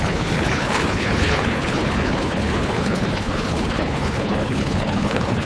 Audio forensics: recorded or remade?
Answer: remade